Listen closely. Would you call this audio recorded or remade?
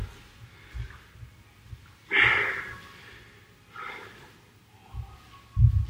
recorded